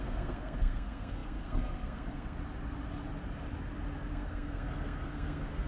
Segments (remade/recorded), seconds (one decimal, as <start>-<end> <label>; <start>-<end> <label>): 0.0-2.4 remade; 2.4-4.1 recorded; 4.1-5.7 remade